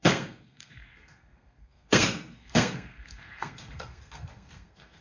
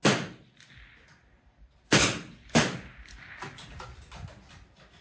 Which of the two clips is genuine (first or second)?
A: second